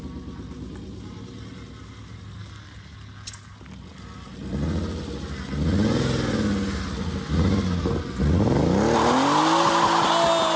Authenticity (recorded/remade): recorded